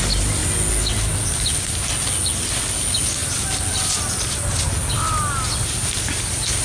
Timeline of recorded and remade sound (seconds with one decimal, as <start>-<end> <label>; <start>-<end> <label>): 0.0-6.6 recorded

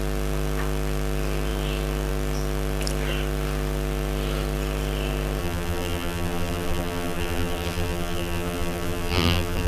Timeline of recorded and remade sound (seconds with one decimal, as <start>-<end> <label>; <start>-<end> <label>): 0.0-5.4 recorded; 5.4-9.7 remade

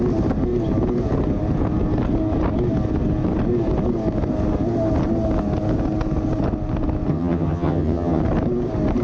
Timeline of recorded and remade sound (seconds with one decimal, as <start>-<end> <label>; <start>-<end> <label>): 0.0-7.1 recorded; 7.1-8.2 remade; 8.2-9.0 recorded

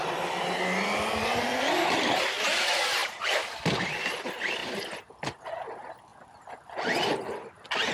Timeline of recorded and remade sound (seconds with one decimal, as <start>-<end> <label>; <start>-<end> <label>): 0.0-7.9 recorded